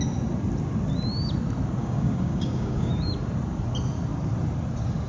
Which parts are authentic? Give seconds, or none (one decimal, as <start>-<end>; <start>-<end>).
0.0-1.8; 2.9-5.1